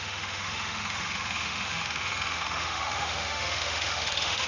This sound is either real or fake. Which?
fake